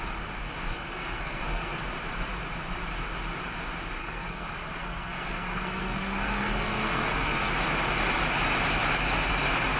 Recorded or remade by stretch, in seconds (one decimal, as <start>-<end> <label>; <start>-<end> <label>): 0.0-0.7 recorded; 0.7-1.8 remade; 1.8-4.0 recorded; 4.0-7.5 remade; 7.5-9.8 recorded